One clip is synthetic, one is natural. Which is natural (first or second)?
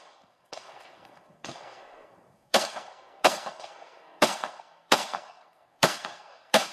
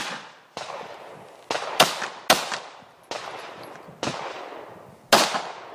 second